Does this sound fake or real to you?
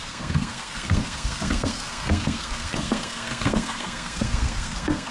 fake